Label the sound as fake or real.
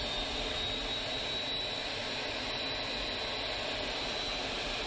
real